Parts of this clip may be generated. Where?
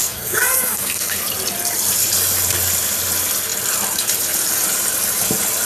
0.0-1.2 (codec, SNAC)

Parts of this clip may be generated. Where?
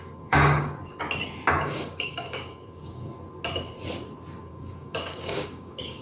0.0-0.8 (codec, DAC); 1.6-3.1; 4.4-6.0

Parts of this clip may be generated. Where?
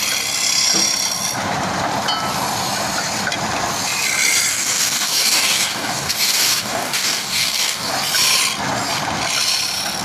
4.5-7.9 (codec, DAC)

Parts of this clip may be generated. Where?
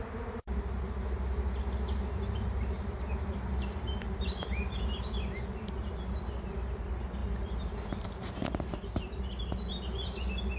7.2-9.2 (vocoder, BigVGAN v2)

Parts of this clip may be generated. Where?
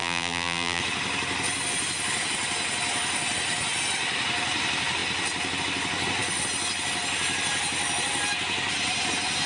0.0-0.8 (vocoder, BigVGAN v2)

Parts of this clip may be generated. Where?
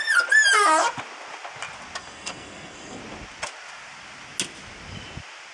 2.0-3.0 (codec, SNAC)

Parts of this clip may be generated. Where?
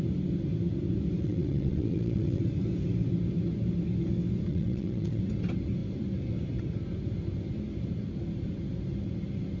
1.2-2.4 (vocoder, WaveNeXt); 4.5-5.2